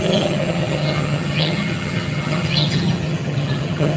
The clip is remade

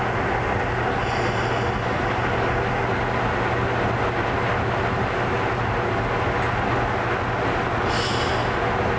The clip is recorded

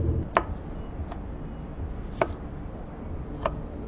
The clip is recorded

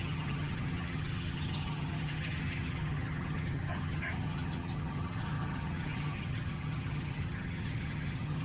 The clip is remade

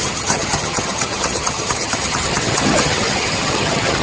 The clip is remade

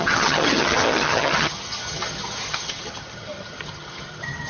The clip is remade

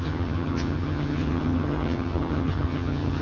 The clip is remade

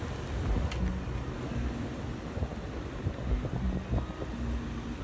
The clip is recorded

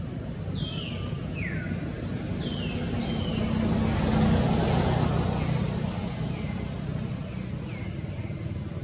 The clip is recorded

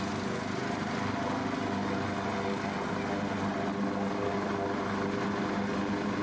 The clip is recorded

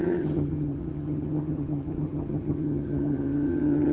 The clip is remade